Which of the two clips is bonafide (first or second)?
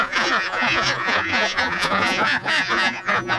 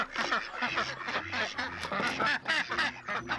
second